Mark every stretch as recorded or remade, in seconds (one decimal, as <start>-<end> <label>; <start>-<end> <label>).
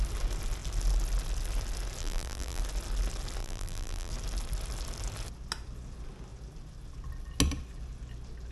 0.0-2.0 recorded; 2.0-2.6 remade; 2.6-3.4 recorded; 3.4-4.1 remade; 4.1-8.5 recorded